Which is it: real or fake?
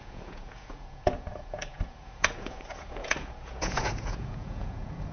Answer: fake